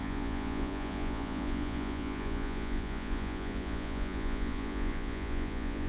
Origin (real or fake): fake